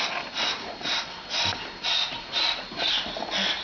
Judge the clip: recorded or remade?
recorded